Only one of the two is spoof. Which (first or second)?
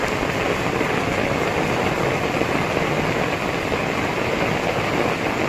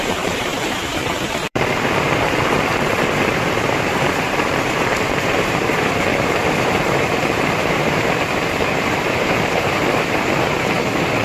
second